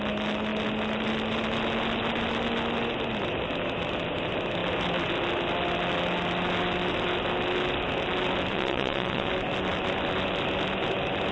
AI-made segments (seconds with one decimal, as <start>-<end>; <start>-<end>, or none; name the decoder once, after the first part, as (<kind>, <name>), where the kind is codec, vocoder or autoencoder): 8.5-9.3 (vocoder, WaveNeXt)